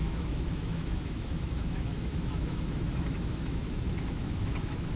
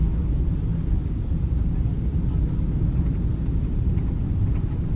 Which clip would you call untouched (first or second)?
second